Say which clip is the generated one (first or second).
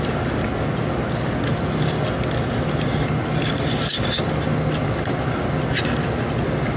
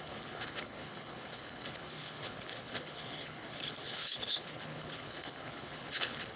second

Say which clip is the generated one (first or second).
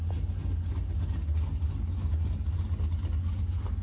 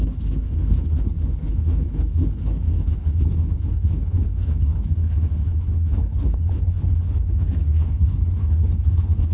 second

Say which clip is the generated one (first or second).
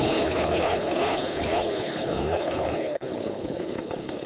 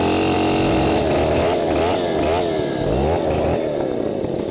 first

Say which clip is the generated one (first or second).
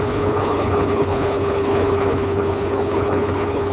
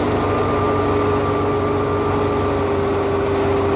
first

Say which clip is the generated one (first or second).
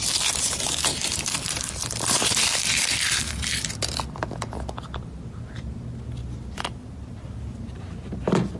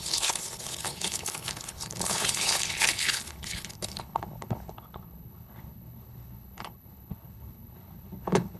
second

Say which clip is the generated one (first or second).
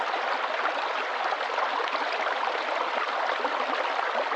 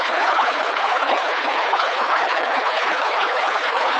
second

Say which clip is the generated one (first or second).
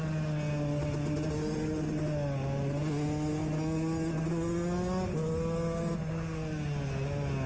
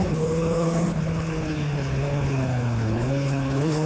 second